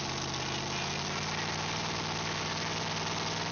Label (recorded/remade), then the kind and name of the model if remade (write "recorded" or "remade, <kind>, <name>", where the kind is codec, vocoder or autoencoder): recorded